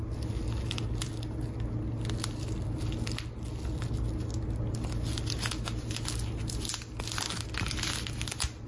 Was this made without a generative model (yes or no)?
yes